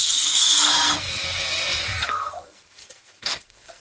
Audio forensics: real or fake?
fake